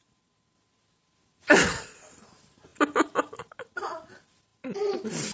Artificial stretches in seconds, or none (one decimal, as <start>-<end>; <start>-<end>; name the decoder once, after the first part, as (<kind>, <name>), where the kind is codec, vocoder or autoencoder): none